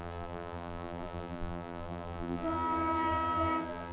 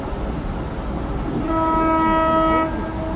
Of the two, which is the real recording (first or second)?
second